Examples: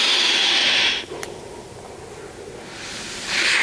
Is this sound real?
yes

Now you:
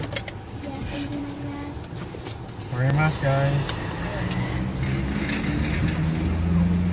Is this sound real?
yes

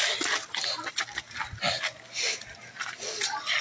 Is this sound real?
yes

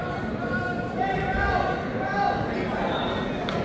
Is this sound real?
no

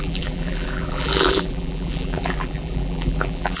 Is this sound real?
no